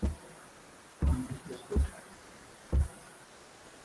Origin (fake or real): real